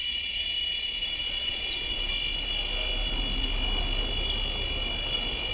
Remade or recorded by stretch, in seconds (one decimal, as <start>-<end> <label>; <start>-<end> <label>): 0.0-2.1 remade; 2.1-5.5 recorded